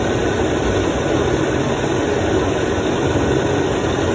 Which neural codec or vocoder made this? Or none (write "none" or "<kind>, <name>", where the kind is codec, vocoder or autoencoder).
none